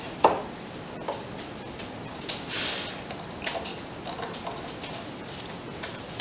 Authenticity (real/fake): real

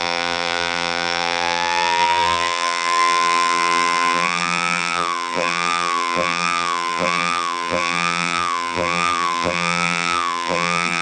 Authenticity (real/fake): fake